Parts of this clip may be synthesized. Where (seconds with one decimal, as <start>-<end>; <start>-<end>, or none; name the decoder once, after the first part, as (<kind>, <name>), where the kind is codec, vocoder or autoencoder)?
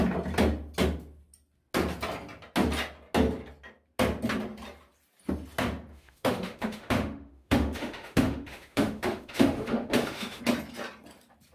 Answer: 5.9-10.4 (autoencoder, DAC-VAE)